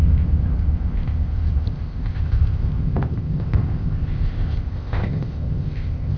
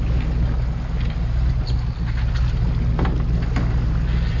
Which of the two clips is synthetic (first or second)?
first